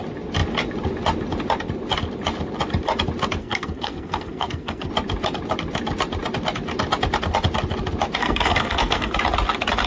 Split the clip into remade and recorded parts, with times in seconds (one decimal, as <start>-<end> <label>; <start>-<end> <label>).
0.0-3.4 recorded; 3.4-4.9 remade; 4.9-8.2 recorded; 8.2-9.1 remade; 9.1-9.9 recorded